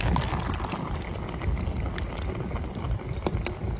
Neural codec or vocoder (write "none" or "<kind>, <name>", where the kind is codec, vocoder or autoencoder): none